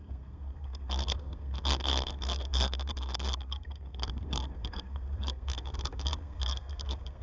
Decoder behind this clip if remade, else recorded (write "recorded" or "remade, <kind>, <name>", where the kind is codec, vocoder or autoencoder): remade, codec, SNAC